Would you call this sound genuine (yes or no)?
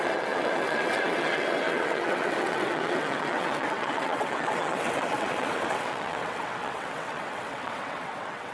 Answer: no